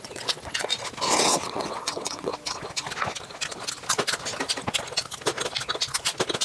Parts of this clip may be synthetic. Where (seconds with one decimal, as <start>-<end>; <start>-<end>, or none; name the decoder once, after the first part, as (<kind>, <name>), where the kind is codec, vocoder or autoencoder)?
0.0-0.7 (vocoder, WaveNeXt); 1.2-2.3